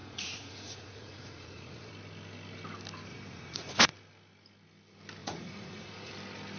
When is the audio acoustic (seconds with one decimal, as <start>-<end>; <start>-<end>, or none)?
1.9-3.1; 3.9-5.2; 6.1-6.6

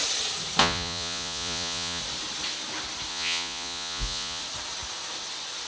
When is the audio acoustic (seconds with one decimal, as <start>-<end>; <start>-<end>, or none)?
0.0-0.6; 2.0-3.1; 4.4-5.7

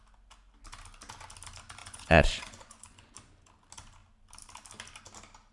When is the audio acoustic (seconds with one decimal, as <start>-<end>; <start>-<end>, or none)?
0.0-1.8; 3.1-5.5

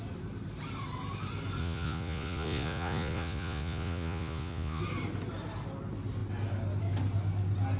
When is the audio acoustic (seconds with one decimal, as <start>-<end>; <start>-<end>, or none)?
0.0-1.6; 4.8-7.8